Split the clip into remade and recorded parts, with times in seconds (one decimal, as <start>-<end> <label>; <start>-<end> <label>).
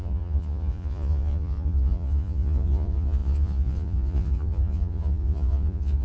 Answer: 0.0-6.0 remade